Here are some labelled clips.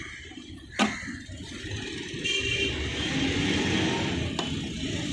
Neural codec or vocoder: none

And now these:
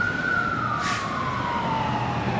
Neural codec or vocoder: vocoder, BigVGAN v2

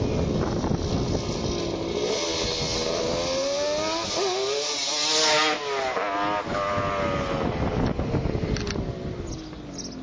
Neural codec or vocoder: none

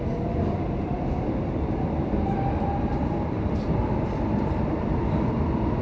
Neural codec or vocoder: vocoder, BigVGAN v2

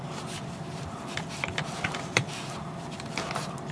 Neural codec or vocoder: vocoder, BigVGAN v2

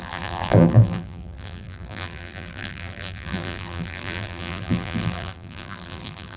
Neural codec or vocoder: vocoder, BigVGAN v2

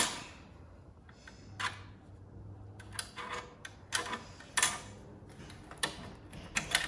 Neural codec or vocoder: none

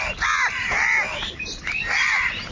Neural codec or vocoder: vocoder, BigVGAN v2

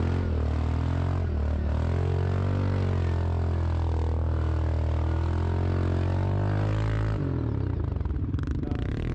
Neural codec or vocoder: none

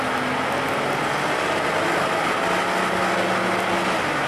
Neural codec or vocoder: none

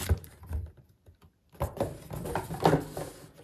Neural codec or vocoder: none